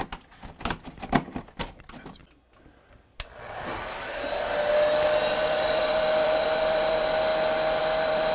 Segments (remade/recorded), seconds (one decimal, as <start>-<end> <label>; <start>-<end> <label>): 0.0-2.2 remade; 2.2-5.4 recorded; 5.4-7.3 remade; 7.3-7.8 recorded; 7.8-8.3 remade